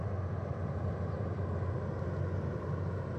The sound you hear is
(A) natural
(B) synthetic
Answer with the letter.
A